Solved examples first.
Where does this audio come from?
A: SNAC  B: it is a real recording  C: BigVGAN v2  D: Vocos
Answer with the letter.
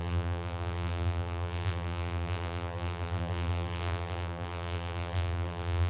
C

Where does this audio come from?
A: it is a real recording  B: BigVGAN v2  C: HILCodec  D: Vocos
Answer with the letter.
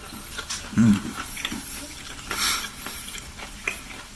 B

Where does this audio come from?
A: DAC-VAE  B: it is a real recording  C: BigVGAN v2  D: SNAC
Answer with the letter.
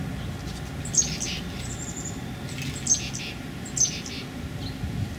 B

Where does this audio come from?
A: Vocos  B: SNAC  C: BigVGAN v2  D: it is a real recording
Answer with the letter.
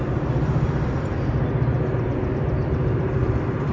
C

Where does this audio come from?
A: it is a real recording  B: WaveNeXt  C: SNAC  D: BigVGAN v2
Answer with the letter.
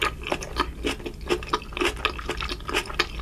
A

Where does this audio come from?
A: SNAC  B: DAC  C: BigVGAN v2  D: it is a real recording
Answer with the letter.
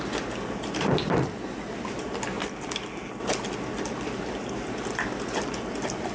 D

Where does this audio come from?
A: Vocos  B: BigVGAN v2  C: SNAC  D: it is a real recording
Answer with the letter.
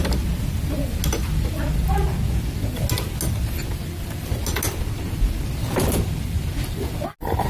D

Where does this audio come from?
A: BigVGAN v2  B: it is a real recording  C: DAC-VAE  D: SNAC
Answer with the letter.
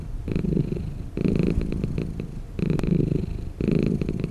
A